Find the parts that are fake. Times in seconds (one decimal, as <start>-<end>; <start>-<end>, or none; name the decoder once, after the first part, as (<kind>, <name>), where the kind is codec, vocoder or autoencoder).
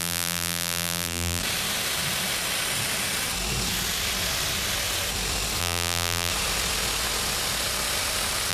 0.0-1.4 (vocoder, BigVGAN v2); 5.6-6.3